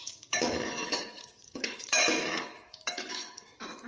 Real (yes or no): no